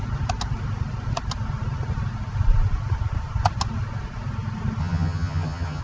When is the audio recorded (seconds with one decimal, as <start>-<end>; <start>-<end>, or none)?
0.0-4.8